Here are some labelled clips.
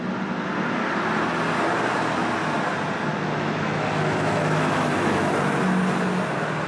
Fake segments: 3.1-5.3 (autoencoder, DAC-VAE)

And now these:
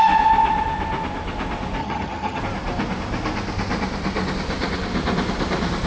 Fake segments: 1.8-2.4 (vocoder, HiFi-GAN)

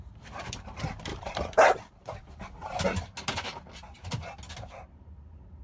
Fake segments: 0.0-2.6 (vocoder, BigVGAN v2)

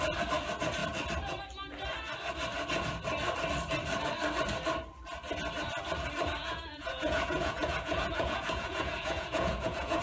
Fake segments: 6.4-10.0 (vocoder, Vocos)

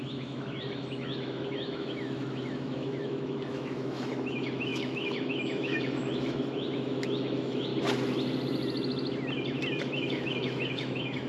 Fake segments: 0.0-7.7 (autoencoder, DAC-VAE); 9.8-11.3

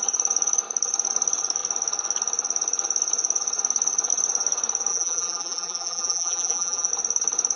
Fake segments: 4.9-6.9 (vocoder, BigVGAN v2)